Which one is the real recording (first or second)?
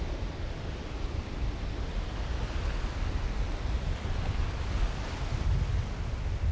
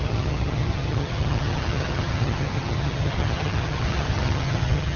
first